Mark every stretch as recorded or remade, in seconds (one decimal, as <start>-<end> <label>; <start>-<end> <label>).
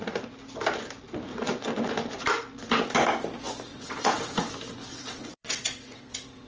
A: 0.0-1.3 recorded; 1.3-1.9 remade; 1.9-3.7 recorded; 3.7-4.5 remade; 4.5-4.9 recorded; 4.9-6.5 remade